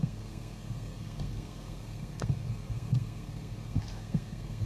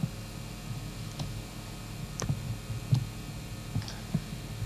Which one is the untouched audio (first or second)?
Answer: second